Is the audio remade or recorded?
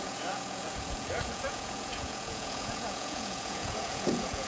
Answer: remade